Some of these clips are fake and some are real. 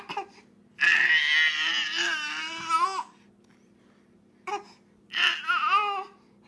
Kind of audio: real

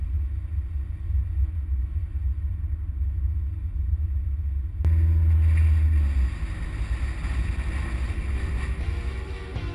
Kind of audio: real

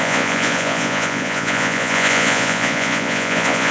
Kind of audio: fake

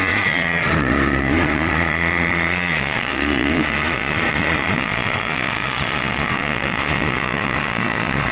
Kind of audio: fake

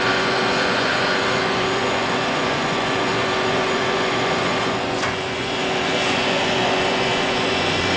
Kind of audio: fake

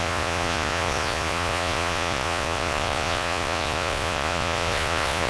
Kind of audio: fake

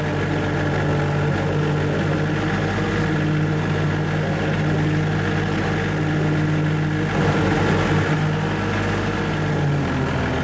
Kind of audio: real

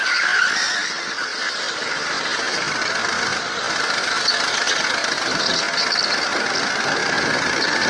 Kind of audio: real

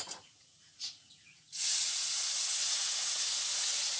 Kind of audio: fake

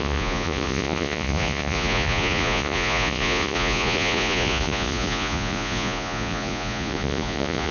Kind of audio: fake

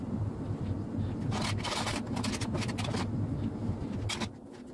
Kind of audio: real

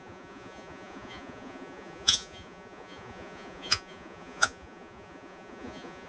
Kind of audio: fake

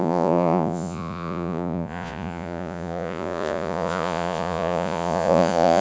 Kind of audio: fake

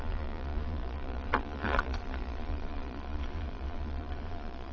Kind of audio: fake